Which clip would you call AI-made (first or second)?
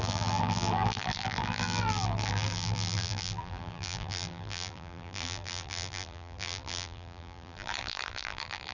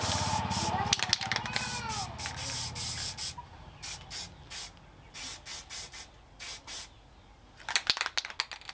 first